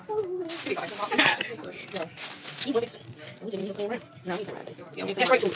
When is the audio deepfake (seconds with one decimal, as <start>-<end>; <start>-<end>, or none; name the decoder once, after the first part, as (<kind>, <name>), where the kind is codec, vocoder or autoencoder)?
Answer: 4.6-5.6 (vocoder, BigVGAN v2)